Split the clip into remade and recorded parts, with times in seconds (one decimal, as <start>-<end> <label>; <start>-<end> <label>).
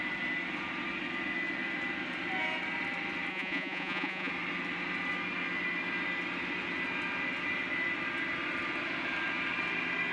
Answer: 0.0-3.3 recorded; 3.3-4.3 remade; 4.3-10.1 recorded